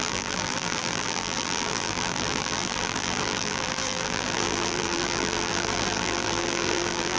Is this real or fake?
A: fake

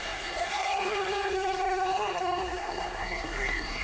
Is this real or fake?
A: fake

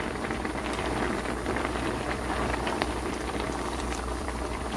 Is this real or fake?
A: fake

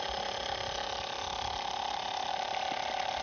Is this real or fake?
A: real